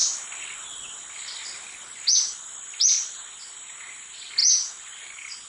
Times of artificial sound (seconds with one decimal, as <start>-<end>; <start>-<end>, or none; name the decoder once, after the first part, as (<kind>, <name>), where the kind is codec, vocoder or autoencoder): 4.4-5.5 (vocoder, BigVGAN v2)